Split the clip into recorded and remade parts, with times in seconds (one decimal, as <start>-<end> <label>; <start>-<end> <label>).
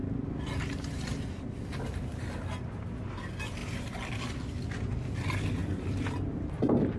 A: 0.0-3.6 recorded; 3.6-4.8 remade; 4.8-7.0 recorded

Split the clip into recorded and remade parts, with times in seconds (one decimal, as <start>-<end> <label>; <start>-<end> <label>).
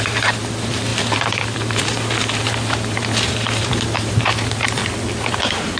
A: 0.0-4.8 remade; 4.8-5.3 recorded; 5.3-5.8 remade